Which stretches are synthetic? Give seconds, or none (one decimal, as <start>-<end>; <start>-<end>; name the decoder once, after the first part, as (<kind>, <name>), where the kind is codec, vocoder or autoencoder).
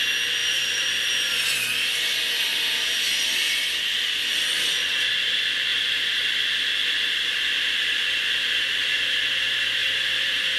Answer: 0.4-1.1 (vocoder, BigVGAN v2); 2.5-3.6; 5.7-6.3; 9.8-10.6